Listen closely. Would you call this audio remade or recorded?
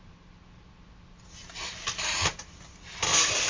recorded